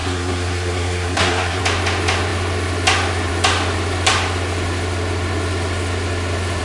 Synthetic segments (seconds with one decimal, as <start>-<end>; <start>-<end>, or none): 0.0-1.6